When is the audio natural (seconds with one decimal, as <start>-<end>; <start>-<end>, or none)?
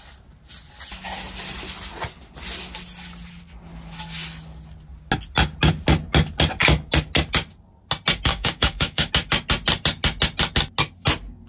0.0-8.3; 9.1-11.5